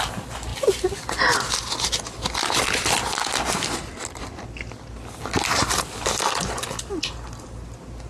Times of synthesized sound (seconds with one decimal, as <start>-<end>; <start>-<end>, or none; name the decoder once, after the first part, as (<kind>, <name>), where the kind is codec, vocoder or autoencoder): none